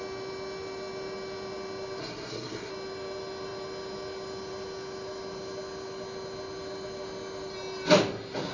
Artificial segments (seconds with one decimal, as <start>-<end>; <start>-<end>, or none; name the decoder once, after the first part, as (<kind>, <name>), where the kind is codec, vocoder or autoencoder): 2.0-2.7 (codec, SNAC)